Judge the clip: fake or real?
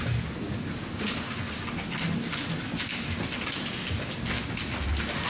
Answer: real